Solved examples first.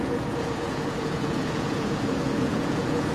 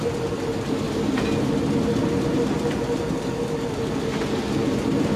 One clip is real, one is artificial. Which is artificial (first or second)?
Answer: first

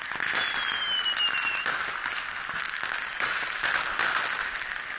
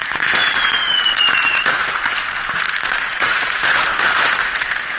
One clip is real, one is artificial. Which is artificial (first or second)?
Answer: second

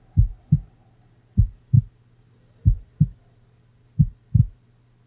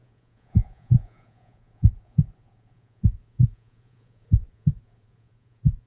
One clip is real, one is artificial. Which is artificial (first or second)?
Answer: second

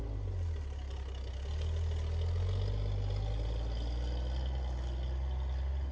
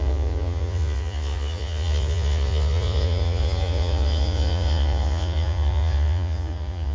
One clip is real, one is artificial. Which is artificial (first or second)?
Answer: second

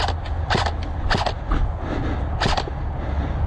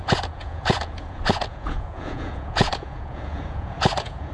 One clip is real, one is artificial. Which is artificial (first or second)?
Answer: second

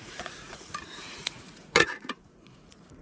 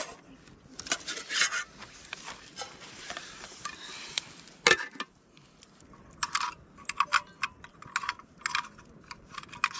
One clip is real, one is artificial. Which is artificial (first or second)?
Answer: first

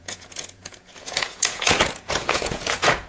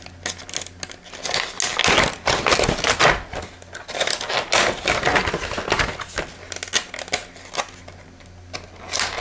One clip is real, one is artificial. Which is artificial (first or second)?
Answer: first